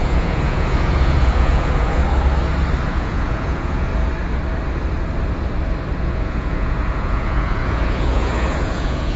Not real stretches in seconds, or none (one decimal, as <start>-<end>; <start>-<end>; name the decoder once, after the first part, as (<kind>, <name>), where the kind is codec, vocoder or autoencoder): 0.0-2.0 (vocoder, Vocos); 2.9-3.9; 6.0-9.2